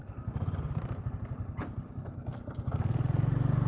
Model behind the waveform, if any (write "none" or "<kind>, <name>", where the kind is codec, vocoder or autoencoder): none